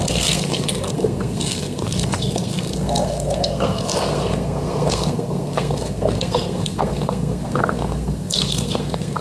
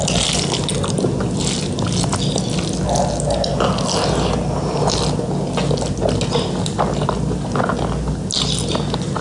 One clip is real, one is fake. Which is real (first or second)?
second